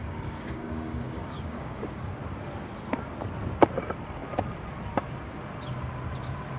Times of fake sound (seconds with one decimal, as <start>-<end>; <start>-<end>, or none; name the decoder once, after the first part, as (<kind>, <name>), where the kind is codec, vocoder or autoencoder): 0.0-2.0 (codec, DAC)